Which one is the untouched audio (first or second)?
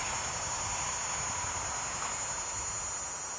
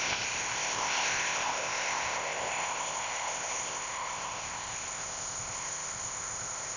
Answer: first